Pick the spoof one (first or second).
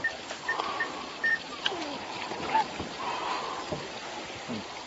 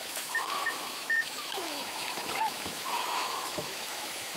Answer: second